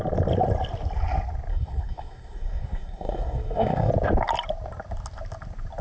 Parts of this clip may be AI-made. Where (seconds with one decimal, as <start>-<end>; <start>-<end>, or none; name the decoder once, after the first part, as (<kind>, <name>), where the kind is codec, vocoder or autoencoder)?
1.5-3.9 (codec, SNAC)